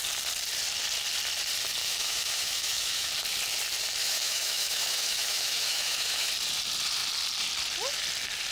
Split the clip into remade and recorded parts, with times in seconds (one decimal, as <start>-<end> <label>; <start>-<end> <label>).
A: 0.0-1.8 recorded; 1.8-3.1 remade; 3.1-4.0 recorded; 4.0-6.3 remade; 6.3-8.5 recorded